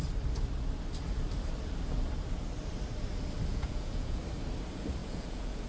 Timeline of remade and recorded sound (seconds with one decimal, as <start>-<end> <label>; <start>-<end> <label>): 0.0-3.5 recorded; 3.5-4.2 remade; 4.2-5.0 recorded; 5.0-5.7 remade